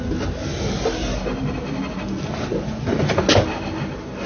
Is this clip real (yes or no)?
yes